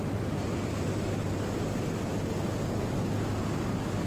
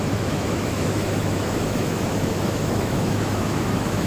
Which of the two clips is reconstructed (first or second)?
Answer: second